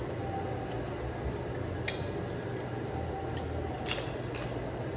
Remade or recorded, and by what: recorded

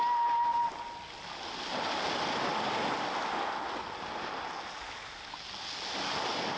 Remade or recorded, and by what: recorded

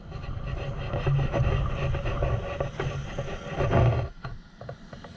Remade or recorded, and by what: recorded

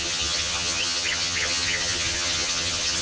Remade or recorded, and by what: remade, vocoder, HiFi-GAN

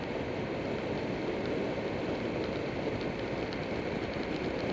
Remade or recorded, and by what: recorded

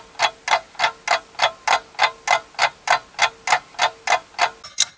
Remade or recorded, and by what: recorded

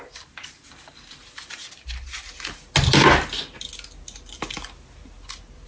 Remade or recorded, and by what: recorded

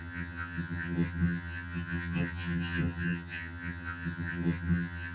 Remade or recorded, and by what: remade, vocoder, HiFi-GAN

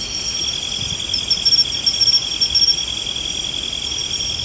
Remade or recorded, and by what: recorded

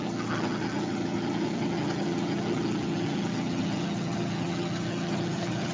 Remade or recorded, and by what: remade, vocoder, HiFi-GAN